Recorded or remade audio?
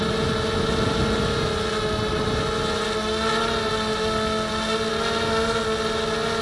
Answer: recorded